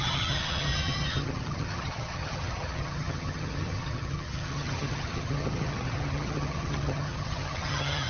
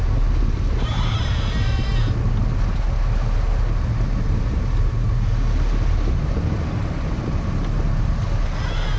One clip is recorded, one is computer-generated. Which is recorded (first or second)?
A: second